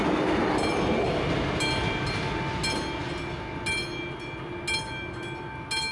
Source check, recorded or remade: recorded